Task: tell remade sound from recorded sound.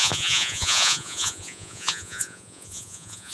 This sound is remade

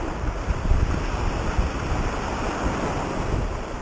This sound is recorded